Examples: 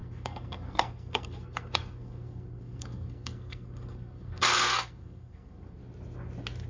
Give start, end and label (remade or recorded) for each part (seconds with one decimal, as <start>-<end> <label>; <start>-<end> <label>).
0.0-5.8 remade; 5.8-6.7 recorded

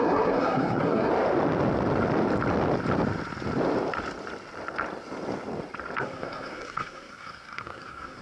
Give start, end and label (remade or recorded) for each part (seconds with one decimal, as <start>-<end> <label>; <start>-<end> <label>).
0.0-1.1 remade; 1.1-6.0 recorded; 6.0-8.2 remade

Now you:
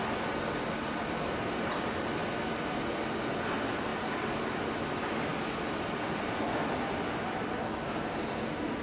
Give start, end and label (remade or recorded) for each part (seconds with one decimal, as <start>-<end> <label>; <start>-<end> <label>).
0.0-8.8 recorded

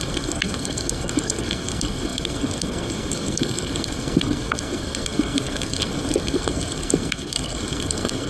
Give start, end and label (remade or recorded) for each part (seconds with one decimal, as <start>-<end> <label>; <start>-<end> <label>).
0.0-8.3 remade

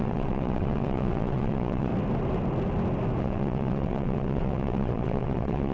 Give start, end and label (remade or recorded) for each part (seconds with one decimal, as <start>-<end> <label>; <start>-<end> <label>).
0.0-1.9 remade; 1.9-3.2 recorded; 3.2-5.7 remade

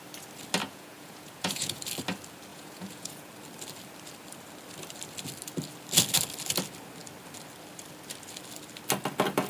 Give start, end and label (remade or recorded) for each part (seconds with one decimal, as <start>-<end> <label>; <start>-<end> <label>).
0.0-0.6 recorded; 0.6-1.8 remade; 1.8-2.5 recorded; 2.5-3.3 remade; 3.3-9.5 recorded

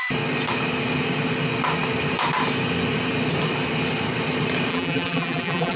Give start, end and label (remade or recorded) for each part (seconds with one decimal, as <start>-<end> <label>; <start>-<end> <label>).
0.0-4.7 recorded; 4.7-5.8 remade